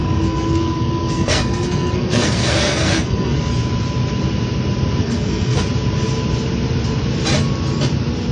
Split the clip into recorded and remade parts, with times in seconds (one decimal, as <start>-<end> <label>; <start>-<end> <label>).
0.0-3.5 remade; 3.5-5.0 recorded; 5.0-5.6 remade; 5.6-8.3 recorded